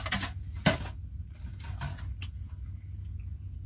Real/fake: real